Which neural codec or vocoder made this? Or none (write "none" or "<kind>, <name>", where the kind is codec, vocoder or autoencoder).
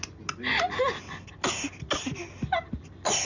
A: none